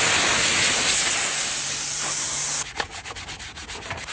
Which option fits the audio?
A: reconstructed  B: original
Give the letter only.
B